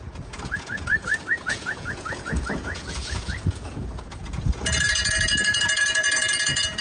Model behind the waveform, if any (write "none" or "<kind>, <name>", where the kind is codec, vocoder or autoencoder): vocoder, Vocos